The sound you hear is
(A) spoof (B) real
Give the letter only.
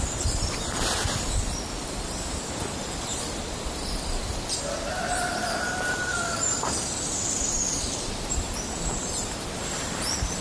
A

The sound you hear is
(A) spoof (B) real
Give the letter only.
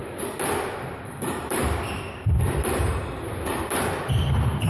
A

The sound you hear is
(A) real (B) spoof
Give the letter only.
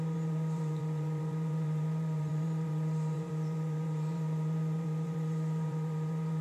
B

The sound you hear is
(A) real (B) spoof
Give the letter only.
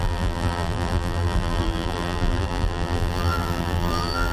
B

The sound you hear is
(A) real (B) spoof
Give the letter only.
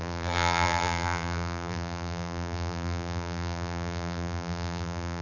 B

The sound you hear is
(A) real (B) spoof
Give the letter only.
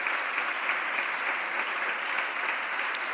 A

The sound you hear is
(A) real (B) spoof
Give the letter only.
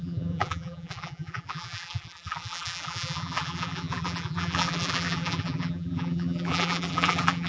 B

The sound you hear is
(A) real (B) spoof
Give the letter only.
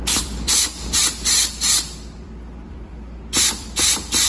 B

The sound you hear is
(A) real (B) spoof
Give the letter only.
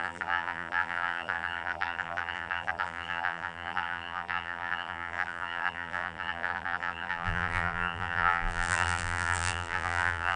B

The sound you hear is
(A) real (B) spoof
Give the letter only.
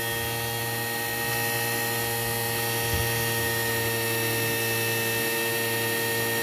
A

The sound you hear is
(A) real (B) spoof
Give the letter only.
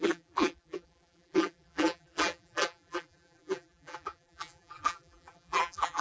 B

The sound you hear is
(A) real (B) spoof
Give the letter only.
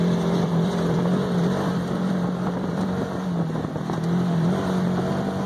B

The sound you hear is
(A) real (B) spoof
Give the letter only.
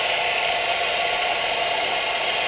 A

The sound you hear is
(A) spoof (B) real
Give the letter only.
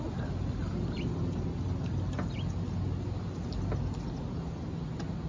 B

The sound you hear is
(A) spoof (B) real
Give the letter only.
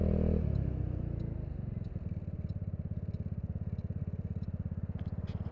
B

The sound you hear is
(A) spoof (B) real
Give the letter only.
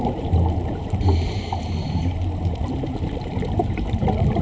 A